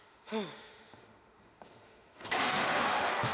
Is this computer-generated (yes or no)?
yes